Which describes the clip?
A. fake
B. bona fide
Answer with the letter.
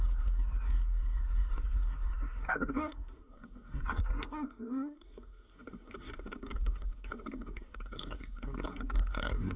A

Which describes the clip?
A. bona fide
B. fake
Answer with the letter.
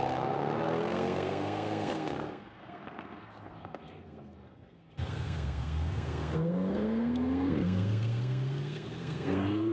B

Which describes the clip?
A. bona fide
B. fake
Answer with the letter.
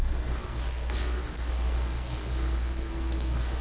B